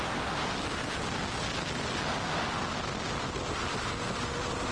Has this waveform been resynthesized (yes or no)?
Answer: no